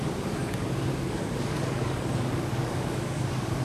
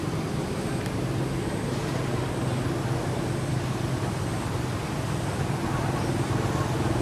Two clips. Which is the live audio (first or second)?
second